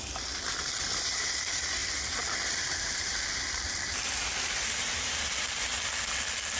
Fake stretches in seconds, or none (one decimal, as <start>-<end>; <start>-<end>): none